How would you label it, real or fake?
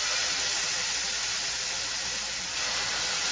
real